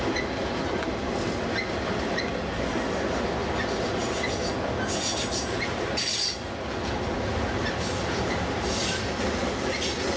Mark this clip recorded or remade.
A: recorded